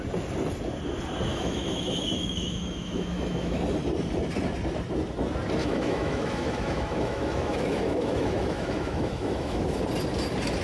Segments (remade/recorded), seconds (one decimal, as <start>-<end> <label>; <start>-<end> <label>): 0.0-1.3 recorded; 1.3-3.6 remade; 3.6-5.6 recorded; 5.6-9.8 remade; 9.8-10.6 recorded